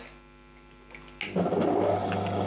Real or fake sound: real